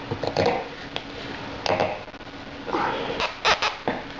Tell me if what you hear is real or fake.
real